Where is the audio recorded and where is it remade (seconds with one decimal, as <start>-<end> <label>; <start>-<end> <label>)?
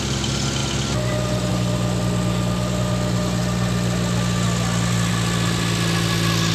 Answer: 0.0-6.5 recorded